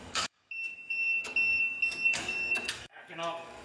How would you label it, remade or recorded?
remade